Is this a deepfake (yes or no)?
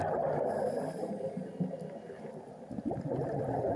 no